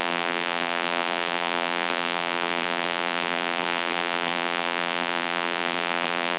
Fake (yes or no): yes